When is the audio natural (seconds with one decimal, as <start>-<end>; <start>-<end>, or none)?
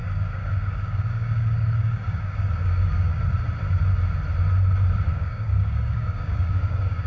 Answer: 3.2-5.1